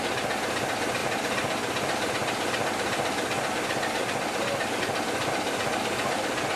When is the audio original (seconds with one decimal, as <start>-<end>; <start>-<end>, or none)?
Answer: 0.0-6.6